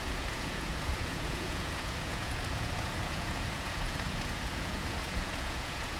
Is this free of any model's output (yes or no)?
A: no